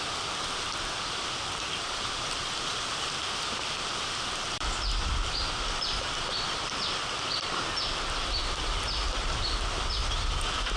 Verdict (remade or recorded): remade